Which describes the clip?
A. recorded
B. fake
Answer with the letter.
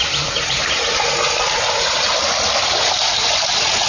A